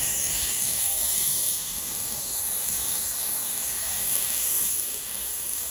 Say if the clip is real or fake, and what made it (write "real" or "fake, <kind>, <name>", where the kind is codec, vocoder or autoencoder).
fake, codec, DAC